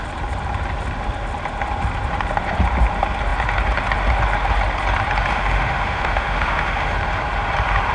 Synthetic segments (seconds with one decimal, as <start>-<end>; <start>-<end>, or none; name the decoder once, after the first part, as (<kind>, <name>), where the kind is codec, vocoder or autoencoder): 5.3-6.9 (autoencoder, DAC-VAE)